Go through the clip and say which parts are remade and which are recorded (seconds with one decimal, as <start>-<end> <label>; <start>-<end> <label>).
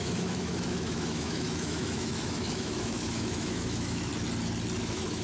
0.0-4.1 remade; 4.1-4.8 recorded; 4.8-5.2 remade